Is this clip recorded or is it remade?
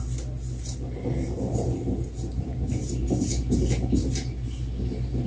recorded